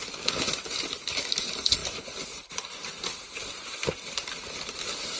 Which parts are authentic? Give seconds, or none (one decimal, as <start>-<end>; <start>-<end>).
none